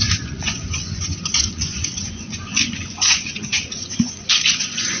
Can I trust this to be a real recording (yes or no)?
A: no